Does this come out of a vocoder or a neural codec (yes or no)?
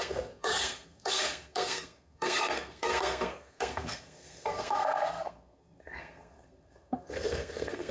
yes